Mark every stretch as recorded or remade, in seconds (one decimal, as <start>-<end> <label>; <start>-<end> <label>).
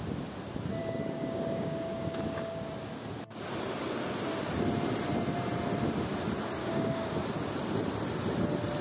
0.0-0.8 recorded; 0.8-2.7 remade; 2.7-6.6 recorded; 6.6-7.2 remade; 7.2-8.8 recorded